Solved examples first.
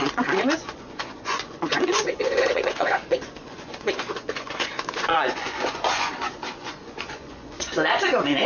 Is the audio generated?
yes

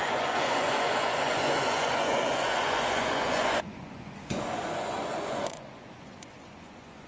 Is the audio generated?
yes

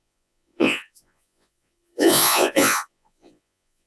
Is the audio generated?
yes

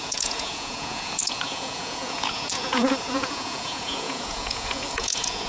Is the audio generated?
yes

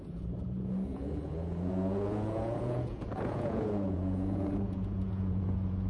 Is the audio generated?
yes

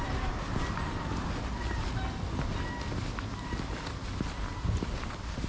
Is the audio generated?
no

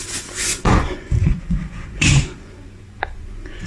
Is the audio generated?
yes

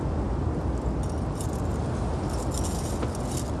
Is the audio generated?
no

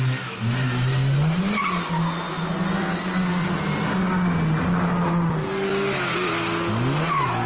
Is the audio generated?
no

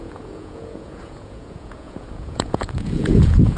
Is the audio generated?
yes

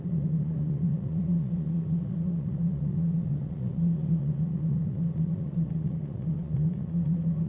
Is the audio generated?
yes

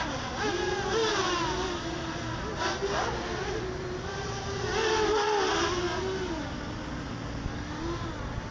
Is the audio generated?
no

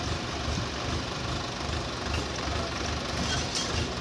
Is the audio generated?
no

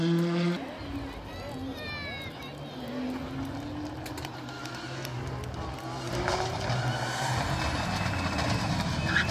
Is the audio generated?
no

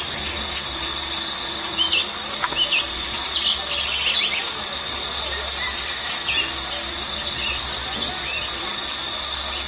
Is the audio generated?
no